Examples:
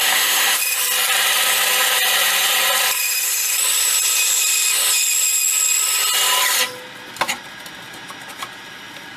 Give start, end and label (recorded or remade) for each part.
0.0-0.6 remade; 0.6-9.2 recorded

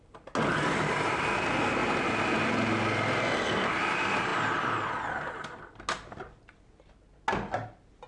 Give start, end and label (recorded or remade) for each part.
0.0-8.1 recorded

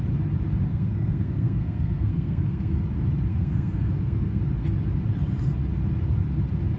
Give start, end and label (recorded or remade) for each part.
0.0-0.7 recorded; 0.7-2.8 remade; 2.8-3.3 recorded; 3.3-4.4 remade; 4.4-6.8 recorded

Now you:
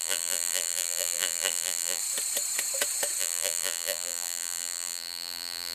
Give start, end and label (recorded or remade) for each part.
0.0-2.0 remade; 2.0-3.2 recorded; 3.2-5.7 remade

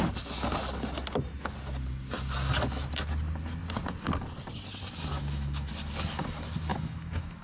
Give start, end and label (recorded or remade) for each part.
0.0-5.1 recorded; 5.1-5.7 remade; 5.7-6.7 recorded; 6.7-7.4 remade